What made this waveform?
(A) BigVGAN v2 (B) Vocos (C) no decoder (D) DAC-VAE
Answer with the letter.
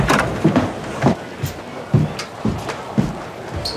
C